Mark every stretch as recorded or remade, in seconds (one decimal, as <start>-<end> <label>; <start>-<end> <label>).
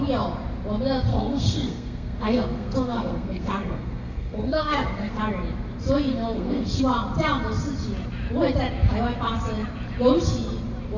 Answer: 0.0-1.1 recorded; 1.1-5.2 remade; 5.2-6.1 recorded; 6.1-6.8 remade; 6.8-11.0 recorded